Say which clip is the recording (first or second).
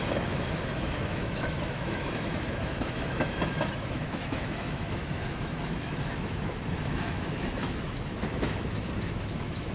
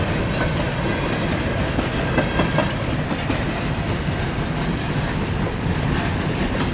second